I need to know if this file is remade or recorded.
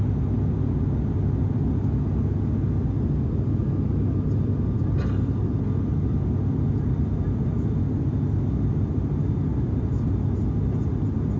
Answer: recorded